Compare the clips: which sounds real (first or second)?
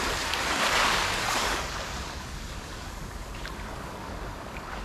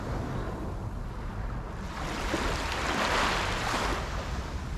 second